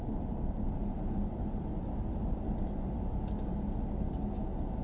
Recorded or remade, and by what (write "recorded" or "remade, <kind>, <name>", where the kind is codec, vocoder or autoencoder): recorded